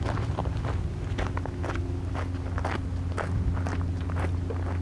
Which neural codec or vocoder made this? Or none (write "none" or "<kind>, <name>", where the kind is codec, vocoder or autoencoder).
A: none